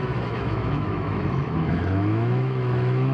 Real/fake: fake